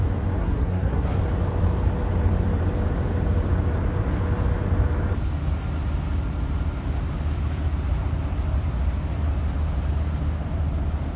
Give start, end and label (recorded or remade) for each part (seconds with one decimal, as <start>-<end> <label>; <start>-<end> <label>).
0.0-0.4 recorded; 0.4-1.2 remade; 1.2-11.2 recorded